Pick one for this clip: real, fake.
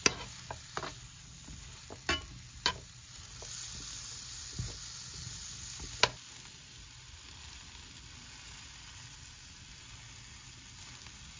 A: real